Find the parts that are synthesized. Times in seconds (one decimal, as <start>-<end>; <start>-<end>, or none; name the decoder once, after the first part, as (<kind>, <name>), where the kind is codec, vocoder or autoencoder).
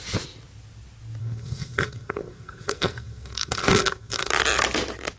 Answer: 1.2-4.3 (codec, SNAC)